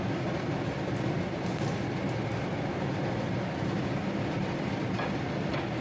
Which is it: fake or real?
real